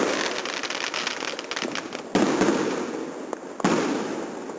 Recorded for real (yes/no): yes